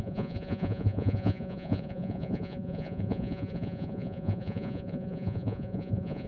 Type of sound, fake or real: fake